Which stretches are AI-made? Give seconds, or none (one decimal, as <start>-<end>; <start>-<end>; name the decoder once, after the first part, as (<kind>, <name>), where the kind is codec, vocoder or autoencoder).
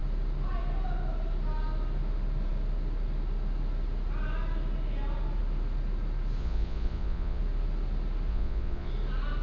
6.4-7.4 (vocoder, Vocos); 8.3-8.9